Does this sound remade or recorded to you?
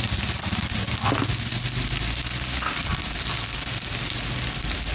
recorded